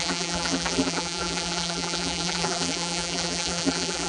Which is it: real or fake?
fake